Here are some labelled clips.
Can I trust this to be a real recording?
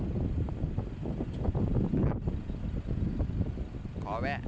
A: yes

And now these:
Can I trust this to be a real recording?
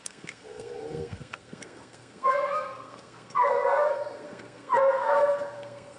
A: no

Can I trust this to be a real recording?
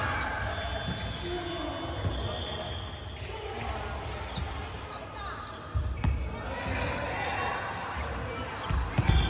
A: yes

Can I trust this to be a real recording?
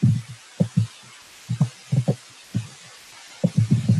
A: yes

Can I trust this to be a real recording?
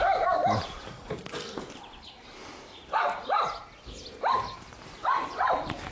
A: yes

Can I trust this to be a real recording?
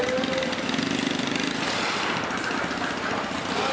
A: yes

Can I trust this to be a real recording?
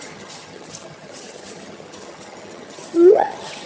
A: no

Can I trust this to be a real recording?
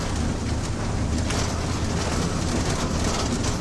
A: yes